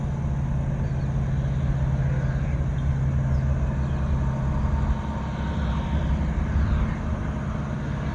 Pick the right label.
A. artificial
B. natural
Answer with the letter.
B